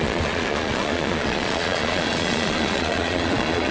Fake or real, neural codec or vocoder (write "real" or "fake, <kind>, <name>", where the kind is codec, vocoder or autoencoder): fake, vocoder, Vocos